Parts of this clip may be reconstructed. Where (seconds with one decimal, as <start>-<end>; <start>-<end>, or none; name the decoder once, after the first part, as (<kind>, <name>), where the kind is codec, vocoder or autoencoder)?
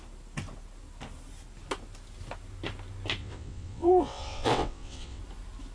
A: 3.2-5.2 (vocoder, WaveNeXt)